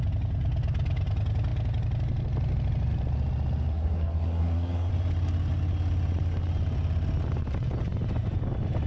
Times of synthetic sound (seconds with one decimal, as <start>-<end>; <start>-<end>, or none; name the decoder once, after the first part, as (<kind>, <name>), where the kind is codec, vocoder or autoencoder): 3.7-4.9 (codec, SNAC)